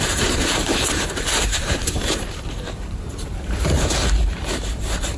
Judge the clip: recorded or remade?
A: remade